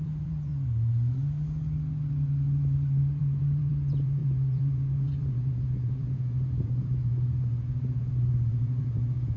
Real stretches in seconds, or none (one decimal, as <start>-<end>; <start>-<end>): 0.5-3.2